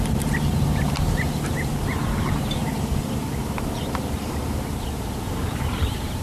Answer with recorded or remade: remade